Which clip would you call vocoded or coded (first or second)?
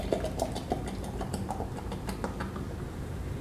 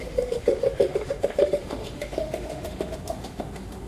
second